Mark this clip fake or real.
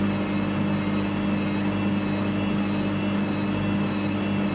real